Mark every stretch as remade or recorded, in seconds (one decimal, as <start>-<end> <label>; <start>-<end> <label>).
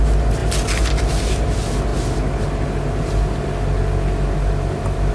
0.0-5.1 recorded